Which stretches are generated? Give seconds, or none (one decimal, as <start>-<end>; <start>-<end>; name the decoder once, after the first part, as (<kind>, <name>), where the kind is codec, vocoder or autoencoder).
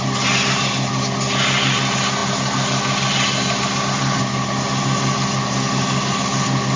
none